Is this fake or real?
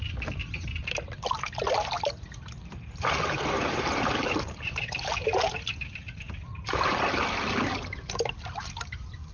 real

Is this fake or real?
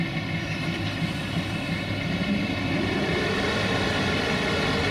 real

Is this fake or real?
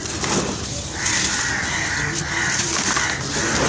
real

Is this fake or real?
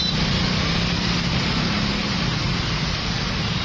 real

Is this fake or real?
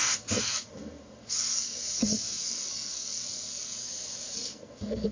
fake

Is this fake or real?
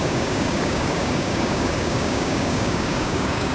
fake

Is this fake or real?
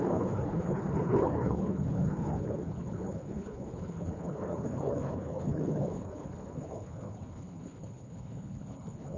fake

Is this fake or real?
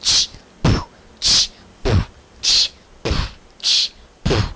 real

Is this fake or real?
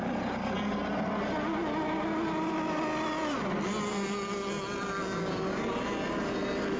real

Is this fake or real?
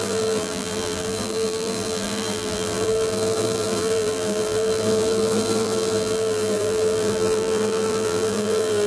fake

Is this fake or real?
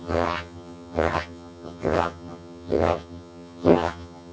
fake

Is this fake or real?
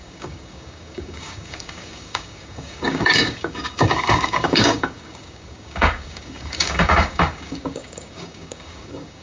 fake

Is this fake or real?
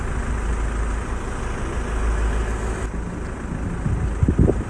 real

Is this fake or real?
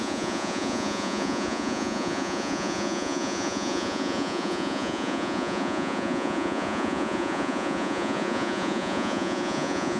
fake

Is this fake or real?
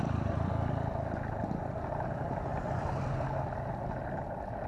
real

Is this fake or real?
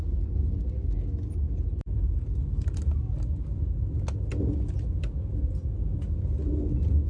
real